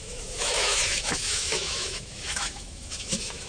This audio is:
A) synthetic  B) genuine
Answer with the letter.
A